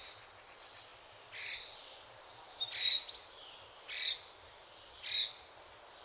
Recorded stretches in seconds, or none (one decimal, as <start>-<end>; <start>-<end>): 0.0-6.0